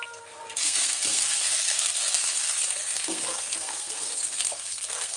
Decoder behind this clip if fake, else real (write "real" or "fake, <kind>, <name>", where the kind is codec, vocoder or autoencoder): fake, codec, SNAC